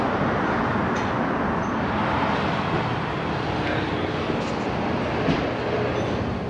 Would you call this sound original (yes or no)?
yes